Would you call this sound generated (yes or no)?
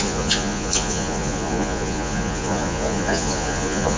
yes